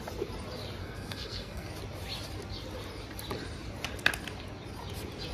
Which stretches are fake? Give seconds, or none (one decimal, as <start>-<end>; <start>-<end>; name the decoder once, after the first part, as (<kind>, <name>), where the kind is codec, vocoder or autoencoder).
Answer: 0.8-1.7 (codec, SNAC)